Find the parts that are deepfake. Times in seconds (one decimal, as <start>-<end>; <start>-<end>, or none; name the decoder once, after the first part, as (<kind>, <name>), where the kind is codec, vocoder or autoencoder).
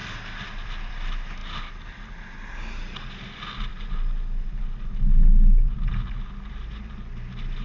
0.0-0.9 (vocoder, BigVGAN v2)